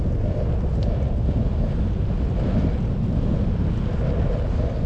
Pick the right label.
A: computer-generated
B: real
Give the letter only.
B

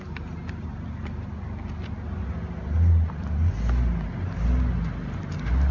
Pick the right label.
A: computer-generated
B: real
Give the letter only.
B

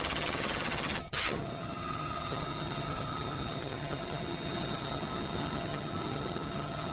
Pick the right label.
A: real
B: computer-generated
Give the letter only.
B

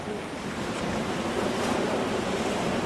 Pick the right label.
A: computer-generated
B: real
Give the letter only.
B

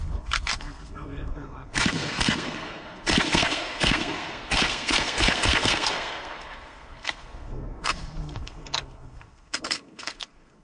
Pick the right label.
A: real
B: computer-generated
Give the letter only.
B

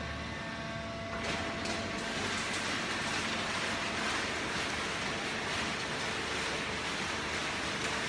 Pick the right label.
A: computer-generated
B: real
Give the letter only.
B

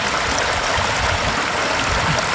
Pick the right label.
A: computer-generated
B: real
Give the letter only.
B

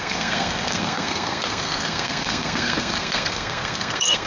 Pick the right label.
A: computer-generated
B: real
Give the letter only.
A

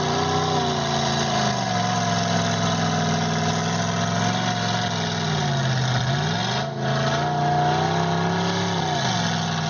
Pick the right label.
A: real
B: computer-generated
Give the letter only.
A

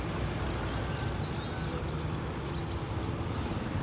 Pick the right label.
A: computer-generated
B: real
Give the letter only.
B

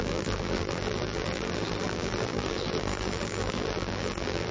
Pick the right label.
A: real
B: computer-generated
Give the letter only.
B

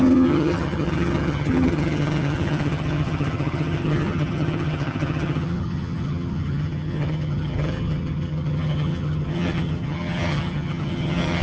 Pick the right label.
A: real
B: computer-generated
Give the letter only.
B